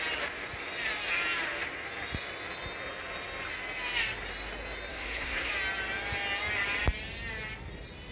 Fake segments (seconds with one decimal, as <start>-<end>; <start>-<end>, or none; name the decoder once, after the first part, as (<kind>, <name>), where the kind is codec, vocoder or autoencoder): 4.9-5.5 (codec, SNAC)